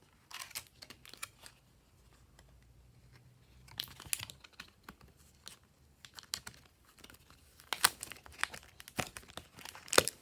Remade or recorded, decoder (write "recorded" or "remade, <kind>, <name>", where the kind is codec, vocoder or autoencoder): recorded